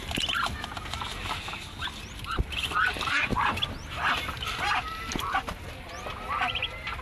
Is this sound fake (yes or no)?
no